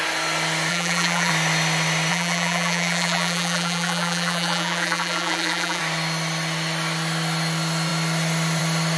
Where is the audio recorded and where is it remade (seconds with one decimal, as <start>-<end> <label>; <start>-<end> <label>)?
0.0-0.7 recorded; 0.7-1.3 remade; 1.3-2.1 recorded; 2.1-5.8 remade; 5.8-9.0 recorded